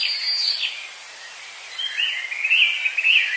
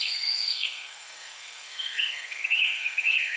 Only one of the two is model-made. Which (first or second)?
second